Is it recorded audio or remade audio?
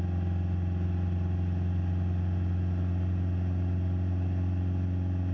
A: recorded